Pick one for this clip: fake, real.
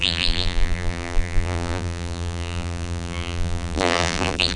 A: fake